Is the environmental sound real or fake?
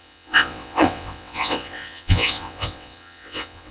fake